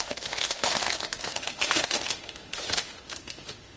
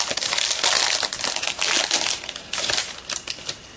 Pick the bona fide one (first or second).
second